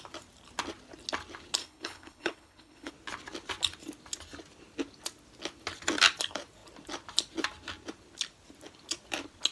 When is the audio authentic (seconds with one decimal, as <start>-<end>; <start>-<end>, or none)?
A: 0.0-1.6; 2.9-9.5